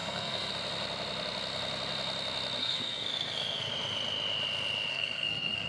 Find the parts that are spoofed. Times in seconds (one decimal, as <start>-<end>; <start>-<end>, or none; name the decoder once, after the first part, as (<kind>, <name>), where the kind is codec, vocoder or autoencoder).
0.0-0.5 (codec, SNAC); 2.6-3.7; 4.9-5.7